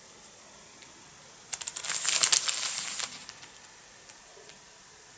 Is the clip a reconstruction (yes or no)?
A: no